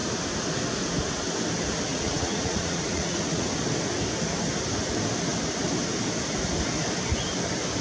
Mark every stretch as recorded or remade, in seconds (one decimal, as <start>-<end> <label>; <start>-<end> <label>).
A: 0.0-1.9 recorded; 1.9-3.5 remade; 3.5-7.8 recorded